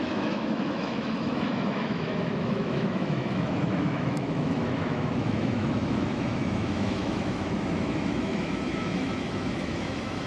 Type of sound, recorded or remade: remade